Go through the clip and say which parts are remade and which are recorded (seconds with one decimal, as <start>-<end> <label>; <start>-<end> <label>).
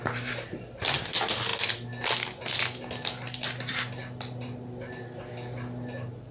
0.0-0.8 remade; 0.8-6.3 recorded